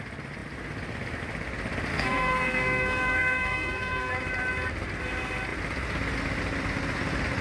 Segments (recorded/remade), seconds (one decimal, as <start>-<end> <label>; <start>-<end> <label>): 0.0-1.9 recorded; 1.9-4.1 remade; 4.1-7.4 recorded